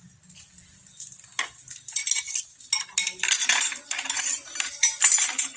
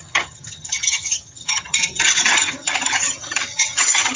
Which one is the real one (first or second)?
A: first